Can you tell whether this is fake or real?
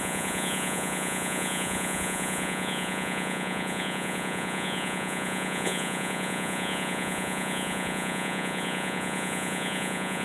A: fake